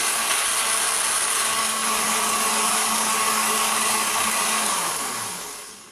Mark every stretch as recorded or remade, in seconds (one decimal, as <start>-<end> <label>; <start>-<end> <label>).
0.0-0.5 remade; 0.5-1.2 recorded; 1.2-5.9 remade